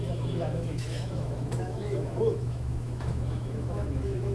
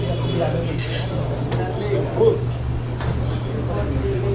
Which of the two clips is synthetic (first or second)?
first